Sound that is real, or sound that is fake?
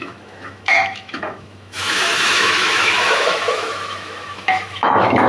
fake